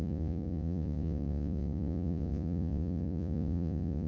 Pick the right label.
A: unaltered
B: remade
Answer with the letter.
B